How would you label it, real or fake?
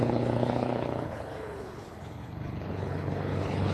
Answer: fake